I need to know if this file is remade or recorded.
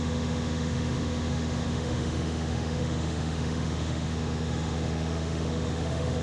remade